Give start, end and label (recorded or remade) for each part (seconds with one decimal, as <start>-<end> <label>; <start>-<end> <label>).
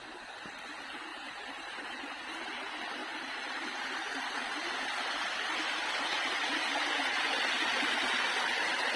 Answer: 0.0-1.1 recorded; 1.1-2.6 remade; 2.6-9.0 recorded